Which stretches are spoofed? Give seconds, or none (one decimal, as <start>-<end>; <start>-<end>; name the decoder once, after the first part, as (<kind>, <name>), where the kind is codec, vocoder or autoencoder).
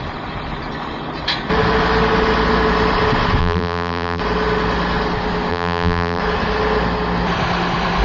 3.4-4.2 (vocoder, BigVGAN v2); 5.5-6.2